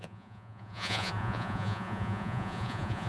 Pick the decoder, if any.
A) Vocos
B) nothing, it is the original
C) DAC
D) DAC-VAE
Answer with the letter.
A